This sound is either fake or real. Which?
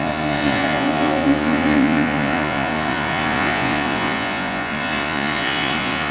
fake